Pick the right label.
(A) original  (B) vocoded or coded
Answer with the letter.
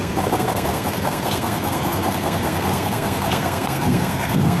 B